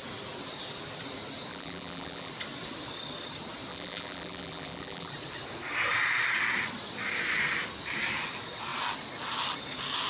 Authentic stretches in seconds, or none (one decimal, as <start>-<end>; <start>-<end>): 0.0-1.5; 2.3-3.7; 5.1-10.1